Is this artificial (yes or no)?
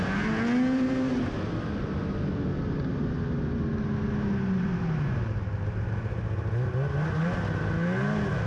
no